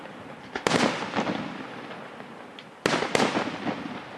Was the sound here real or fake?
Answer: real